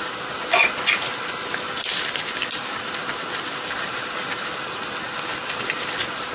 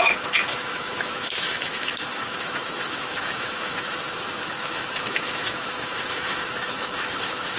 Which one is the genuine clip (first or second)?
first